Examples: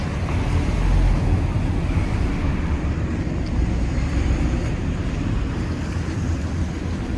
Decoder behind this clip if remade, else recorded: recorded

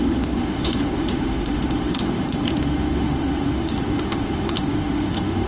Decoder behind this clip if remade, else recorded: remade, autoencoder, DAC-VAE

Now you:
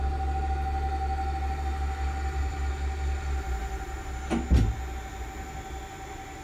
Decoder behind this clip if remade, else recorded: recorded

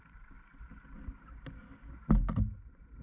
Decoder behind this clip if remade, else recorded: recorded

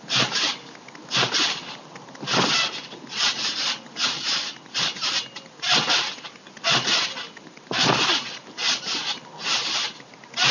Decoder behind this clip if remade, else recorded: recorded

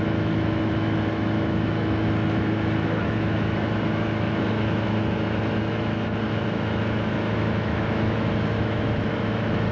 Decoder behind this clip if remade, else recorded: remade, autoencoder, DAC-VAE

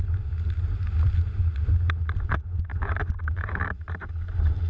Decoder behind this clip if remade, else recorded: recorded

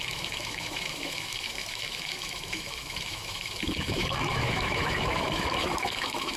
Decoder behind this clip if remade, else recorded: remade, autoencoder, DAC-VAE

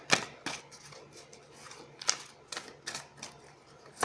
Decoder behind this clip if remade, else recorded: recorded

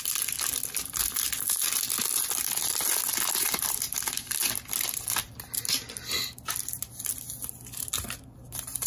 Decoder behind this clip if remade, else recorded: recorded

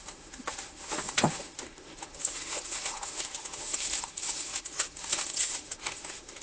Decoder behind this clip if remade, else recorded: remade, autoencoder, DAC-VAE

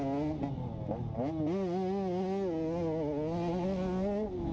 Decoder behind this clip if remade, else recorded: recorded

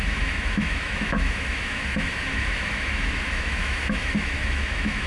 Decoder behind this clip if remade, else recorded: remade, autoencoder, DAC-VAE